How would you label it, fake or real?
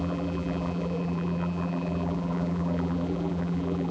fake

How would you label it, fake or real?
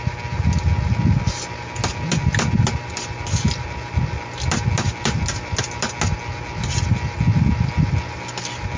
real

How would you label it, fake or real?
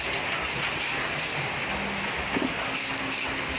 real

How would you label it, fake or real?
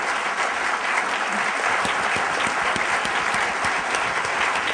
fake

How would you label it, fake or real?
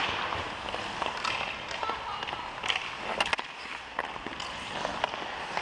real